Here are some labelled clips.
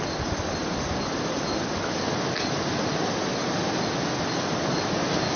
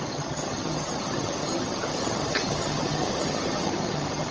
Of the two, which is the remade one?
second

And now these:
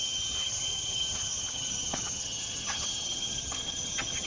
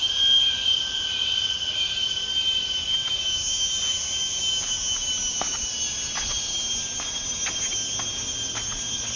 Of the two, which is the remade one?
first